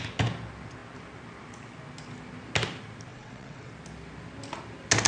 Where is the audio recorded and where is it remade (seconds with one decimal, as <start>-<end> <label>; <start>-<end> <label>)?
0.0-3.1 recorded; 3.1-3.7 remade; 3.7-5.1 recorded